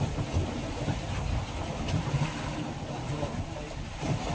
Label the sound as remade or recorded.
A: recorded